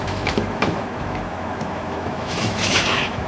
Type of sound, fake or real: fake